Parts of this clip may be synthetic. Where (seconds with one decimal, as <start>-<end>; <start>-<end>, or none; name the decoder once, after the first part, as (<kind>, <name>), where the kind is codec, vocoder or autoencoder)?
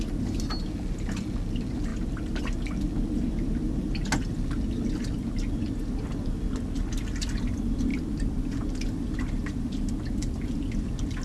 7.9-8.6 (vocoder, BigVGAN v2)